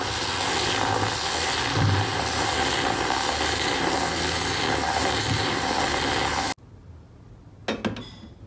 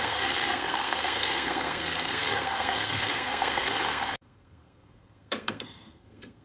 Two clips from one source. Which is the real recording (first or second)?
first